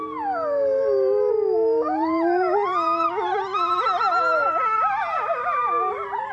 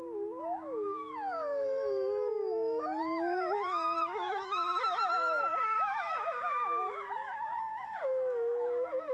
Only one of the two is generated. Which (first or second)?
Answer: second